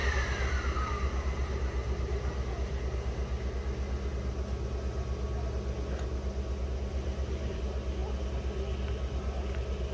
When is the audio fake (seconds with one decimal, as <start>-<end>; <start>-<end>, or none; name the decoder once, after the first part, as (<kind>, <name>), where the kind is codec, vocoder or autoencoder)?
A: 0.0-2.8 (vocoder, BigVGAN v2); 6.9-7.6